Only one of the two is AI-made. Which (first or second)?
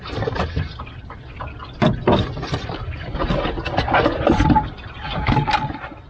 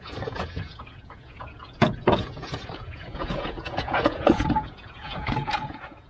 second